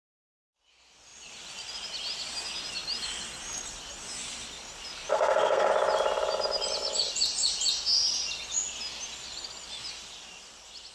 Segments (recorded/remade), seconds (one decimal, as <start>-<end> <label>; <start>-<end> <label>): 0.0-5.1 recorded; 5.1-5.7 remade; 5.7-10.9 recorded